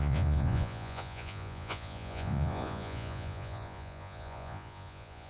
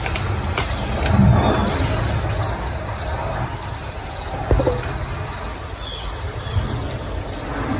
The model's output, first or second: first